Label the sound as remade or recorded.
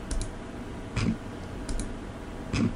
recorded